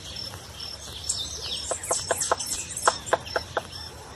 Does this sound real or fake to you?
real